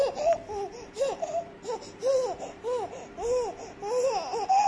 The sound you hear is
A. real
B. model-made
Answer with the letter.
A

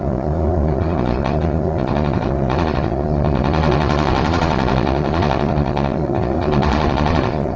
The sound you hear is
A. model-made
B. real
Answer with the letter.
A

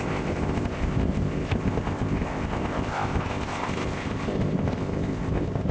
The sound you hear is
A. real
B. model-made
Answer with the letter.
B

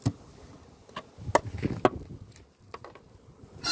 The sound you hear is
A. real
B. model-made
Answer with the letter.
A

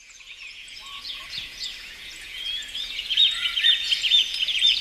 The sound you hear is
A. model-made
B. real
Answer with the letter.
A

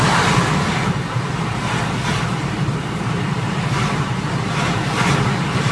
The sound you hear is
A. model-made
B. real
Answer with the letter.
A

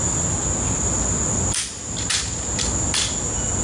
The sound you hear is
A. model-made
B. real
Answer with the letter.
B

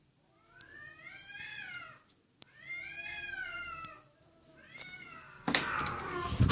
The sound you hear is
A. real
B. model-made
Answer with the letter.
A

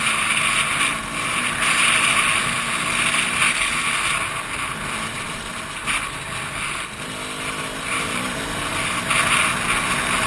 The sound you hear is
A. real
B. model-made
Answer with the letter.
A